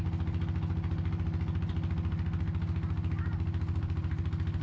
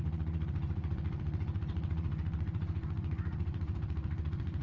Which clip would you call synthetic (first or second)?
second